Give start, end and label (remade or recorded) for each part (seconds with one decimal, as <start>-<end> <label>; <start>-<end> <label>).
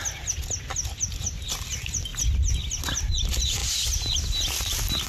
0.0-5.1 recorded